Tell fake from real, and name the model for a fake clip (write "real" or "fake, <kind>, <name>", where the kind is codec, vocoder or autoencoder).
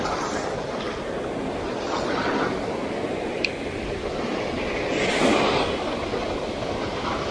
real